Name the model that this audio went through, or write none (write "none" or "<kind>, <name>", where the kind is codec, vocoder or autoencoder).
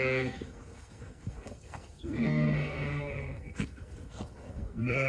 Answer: codec, SNAC